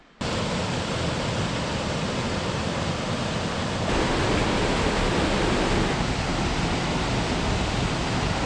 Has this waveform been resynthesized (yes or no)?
no